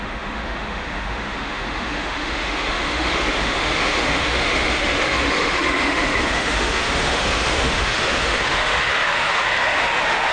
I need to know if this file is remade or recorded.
remade